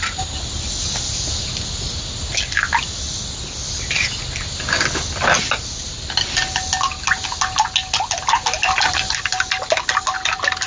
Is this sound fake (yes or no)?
no